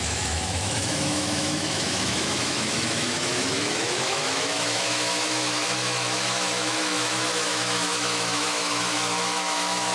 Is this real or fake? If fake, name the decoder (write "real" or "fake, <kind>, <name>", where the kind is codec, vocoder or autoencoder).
fake, autoencoder, DAC-VAE